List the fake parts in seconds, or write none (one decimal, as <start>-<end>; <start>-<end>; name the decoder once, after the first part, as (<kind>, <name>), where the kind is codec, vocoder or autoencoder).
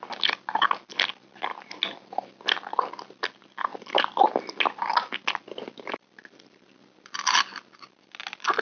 none